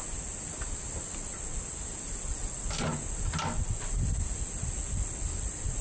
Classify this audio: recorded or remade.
recorded